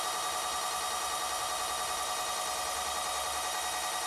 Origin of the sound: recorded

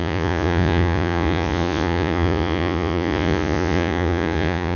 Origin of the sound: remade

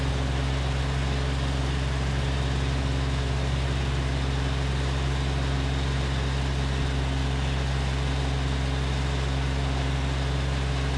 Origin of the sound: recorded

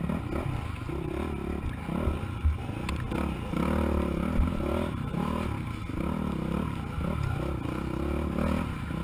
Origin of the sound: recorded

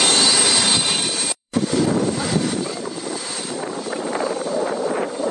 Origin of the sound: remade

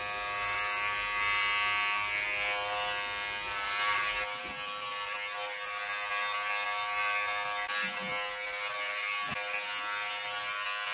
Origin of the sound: recorded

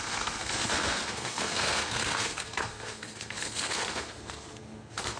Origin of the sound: remade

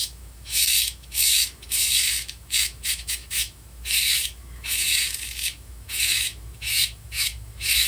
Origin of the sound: remade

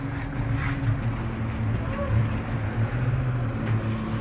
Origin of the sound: recorded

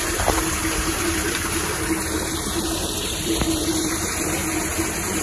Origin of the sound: remade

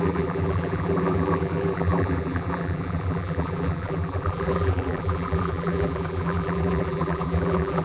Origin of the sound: remade